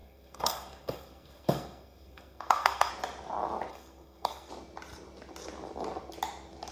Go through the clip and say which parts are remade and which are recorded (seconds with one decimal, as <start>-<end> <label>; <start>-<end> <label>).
0.0-2.9 remade; 2.9-3.7 recorded; 3.7-4.5 remade; 4.5-6.7 recorded